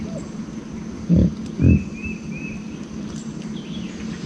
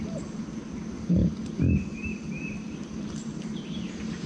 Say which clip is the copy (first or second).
second